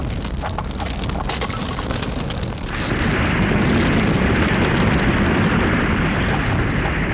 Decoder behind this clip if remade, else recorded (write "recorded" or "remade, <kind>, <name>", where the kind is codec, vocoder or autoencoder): recorded